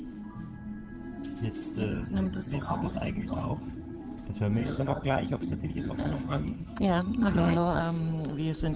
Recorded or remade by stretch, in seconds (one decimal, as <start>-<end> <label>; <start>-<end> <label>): 0.0-1.9 recorded; 1.9-4.0 remade; 4.0-4.6 recorded; 4.6-7.8 remade; 7.8-8.8 recorded